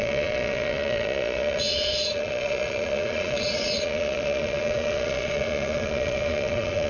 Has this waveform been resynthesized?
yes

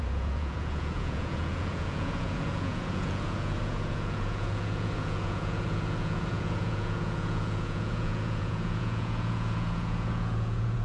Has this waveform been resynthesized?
yes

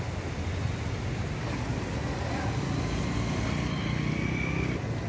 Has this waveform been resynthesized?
no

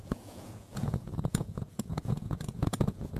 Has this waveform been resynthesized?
yes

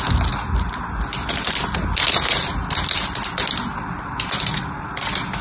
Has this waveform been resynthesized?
no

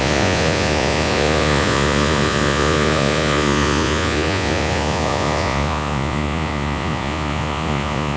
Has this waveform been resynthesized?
yes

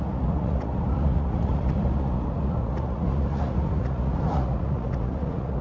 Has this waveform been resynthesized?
yes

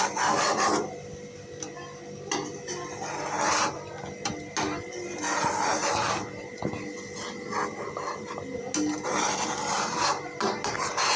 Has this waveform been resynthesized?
no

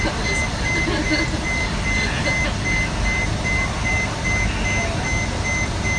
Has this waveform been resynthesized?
no